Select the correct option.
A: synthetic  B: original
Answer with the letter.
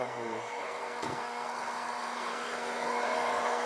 A